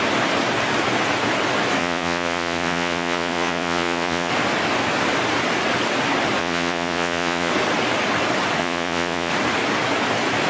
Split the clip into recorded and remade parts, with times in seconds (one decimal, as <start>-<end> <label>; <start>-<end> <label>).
0.0-1.8 recorded; 1.8-4.3 remade; 4.3-6.4 recorded; 6.4-7.5 remade; 7.5-8.6 recorded; 8.6-9.3 remade; 9.3-10.5 recorded